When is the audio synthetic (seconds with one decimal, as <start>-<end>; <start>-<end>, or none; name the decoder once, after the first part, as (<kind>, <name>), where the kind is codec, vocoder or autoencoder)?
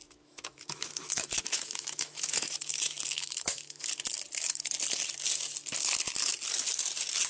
0.0-3.9 (autoencoder, DAC-VAE)